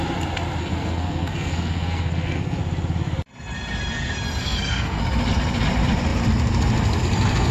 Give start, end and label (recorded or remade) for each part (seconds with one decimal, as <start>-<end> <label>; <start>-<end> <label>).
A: 0.0-0.6 recorded; 0.6-2.6 remade; 2.6-4.4 recorded; 4.4-5.0 remade; 5.0-7.5 recorded